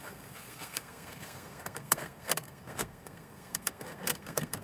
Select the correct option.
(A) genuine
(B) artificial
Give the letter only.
B